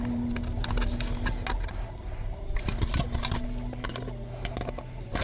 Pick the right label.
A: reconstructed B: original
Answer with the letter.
B